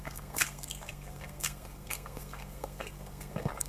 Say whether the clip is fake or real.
fake